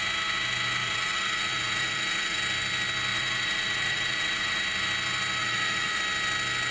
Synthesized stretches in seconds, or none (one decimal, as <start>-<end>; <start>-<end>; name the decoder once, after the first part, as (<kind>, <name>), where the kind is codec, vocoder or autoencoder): 0.8-2.4 (vocoder, Vocos); 3.1-4.6; 5.4-6.0